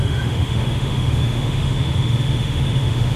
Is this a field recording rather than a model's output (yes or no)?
no